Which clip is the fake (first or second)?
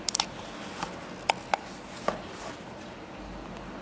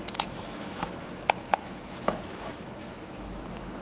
second